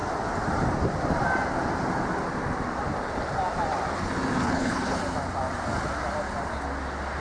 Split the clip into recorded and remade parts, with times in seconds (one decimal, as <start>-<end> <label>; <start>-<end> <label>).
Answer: 0.0-4.4 recorded; 4.4-5.0 remade; 5.0-7.2 recorded